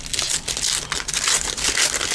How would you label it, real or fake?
real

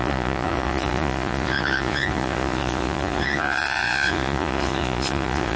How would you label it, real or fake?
fake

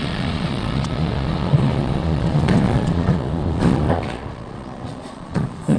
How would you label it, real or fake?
fake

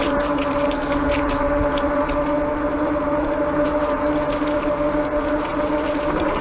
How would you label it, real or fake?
real